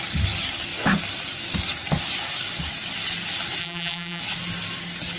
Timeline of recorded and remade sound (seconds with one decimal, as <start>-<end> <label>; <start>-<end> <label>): 0.0-3.6 recorded; 3.6-4.2 remade; 4.2-5.2 recorded